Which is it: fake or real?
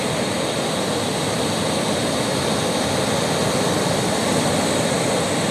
real